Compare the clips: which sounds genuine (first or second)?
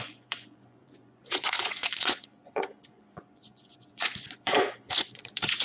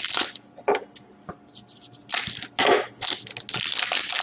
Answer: second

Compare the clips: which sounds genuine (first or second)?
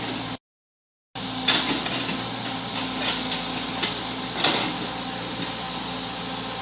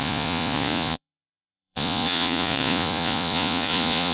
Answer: first